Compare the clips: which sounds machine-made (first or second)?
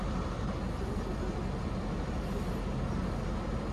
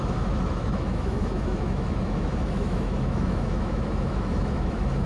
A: second